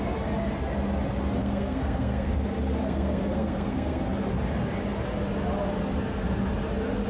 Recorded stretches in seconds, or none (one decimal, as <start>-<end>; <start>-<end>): 0.0-1.4; 2.3-2.8; 4.0-7.1